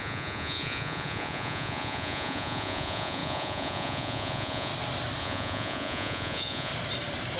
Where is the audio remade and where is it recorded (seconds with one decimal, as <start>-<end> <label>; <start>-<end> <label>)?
0.0-4.7 remade; 4.7-5.2 recorded; 5.2-6.7 remade; 6.7-7.4 recorded